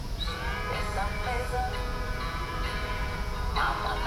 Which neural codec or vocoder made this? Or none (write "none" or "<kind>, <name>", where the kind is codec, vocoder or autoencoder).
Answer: vocoder, Vocos